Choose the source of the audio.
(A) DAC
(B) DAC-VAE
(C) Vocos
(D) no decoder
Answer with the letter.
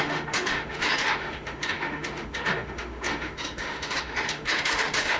B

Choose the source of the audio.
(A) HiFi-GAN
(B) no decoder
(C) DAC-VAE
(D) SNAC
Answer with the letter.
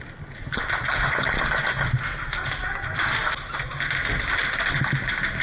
B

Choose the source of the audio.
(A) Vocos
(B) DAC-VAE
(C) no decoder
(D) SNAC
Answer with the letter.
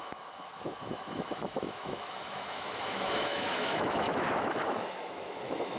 B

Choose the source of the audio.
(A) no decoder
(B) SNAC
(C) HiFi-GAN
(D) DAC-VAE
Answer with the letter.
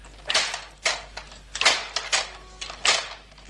A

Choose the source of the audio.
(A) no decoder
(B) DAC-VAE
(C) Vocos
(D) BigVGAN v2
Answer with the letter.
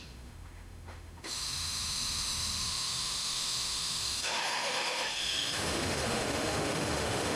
B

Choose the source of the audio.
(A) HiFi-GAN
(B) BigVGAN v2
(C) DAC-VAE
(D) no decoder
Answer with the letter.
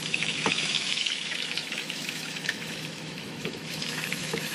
C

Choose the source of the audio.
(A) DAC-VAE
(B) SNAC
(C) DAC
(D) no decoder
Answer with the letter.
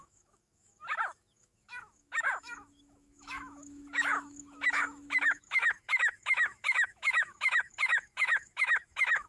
A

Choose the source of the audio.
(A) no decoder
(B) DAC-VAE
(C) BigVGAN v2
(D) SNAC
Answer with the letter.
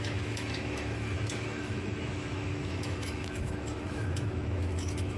B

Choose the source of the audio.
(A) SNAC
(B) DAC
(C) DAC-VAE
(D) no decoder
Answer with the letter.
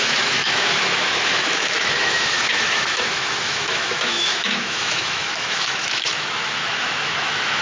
C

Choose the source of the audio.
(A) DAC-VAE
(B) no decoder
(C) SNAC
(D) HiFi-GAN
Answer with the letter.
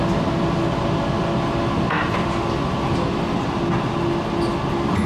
B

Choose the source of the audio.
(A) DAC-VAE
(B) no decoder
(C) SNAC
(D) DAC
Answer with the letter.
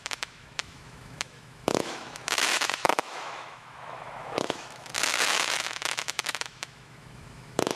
A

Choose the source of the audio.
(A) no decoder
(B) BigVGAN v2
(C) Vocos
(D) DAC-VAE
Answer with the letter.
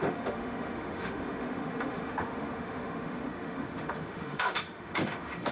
D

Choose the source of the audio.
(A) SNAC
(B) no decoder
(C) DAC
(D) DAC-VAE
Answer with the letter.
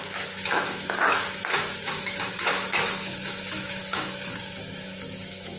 D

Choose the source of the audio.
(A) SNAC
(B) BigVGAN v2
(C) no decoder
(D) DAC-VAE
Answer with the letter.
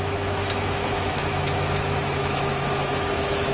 D